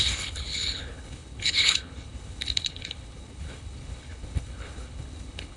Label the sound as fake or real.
fake